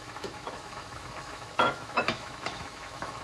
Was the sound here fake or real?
fake